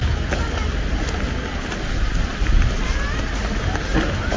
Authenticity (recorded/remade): recorded